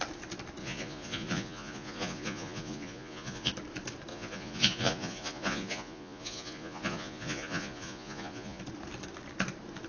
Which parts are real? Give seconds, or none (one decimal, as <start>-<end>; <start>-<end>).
0.0-0.6; 3.5-4.1; 8.6-9.9